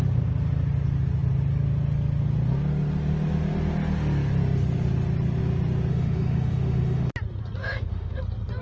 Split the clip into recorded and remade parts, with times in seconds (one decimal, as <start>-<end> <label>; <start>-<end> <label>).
0.0-5.9 recorded; 5.9-7.1 remade; 7.1-7.6 recorded; 7.6-8.2 remade; 8.2-8.6 recorded